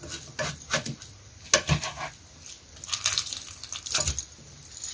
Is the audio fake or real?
real